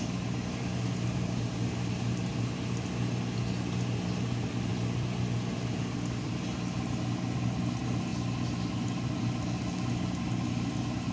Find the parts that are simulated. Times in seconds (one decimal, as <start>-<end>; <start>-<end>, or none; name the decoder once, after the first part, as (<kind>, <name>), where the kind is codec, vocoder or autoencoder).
4.7-6.3 (vocoder, BigVGAN v2)